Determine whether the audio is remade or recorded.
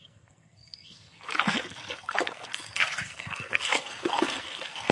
remade